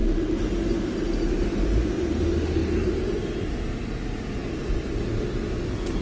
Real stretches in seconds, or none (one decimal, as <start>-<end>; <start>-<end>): 0.0-6.0